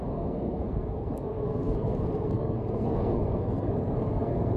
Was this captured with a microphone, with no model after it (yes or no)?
no